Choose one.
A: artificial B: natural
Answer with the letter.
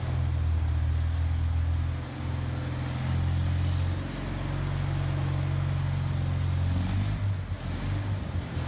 B